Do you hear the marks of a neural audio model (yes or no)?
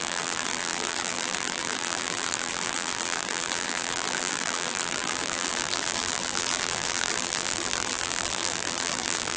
yes